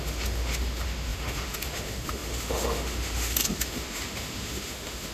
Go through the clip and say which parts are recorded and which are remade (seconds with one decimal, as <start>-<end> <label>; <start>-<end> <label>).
0.0-5.1 remade